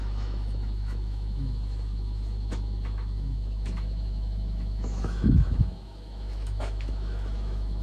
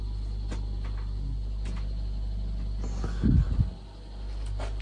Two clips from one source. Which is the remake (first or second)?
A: first